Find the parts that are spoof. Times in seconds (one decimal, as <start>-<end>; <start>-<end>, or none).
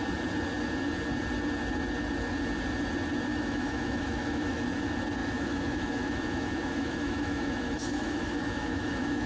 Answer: 3.3-4.6; 5.2-9.3